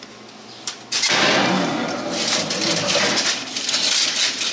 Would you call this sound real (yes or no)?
no